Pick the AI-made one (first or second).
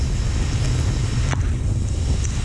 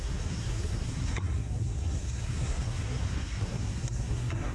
second